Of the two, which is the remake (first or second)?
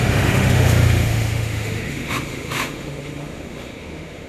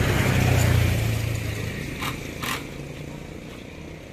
first